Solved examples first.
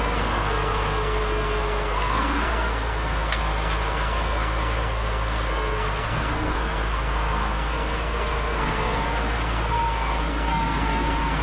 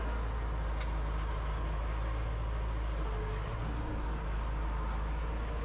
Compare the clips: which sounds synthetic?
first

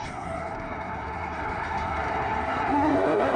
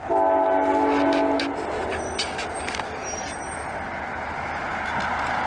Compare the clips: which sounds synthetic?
first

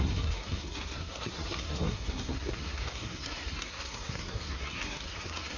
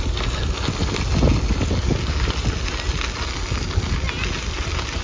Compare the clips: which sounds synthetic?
first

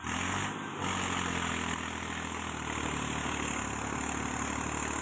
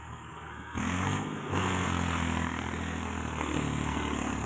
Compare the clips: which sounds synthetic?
second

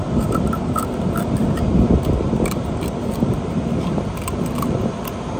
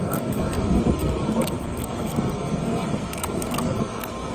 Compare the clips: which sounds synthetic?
second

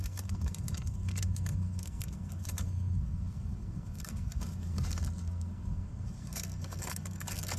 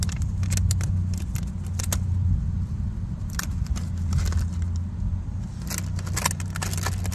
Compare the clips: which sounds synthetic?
first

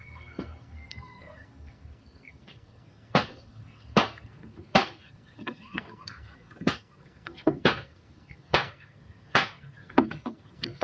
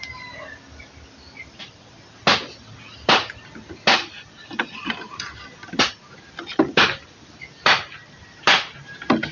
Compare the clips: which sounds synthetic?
first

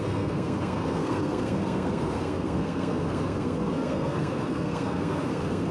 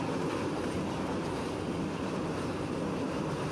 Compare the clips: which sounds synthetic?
first